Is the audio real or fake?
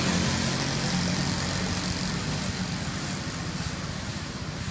real